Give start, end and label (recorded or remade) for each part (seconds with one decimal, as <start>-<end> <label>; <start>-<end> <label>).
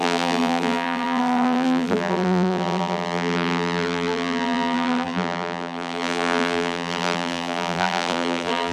0.0-8.7 remade